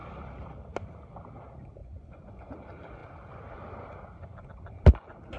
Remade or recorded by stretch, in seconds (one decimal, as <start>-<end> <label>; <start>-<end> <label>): 0.0-1.8 recorded; 1.8-2.5 remade; 2.5-5.4 recorded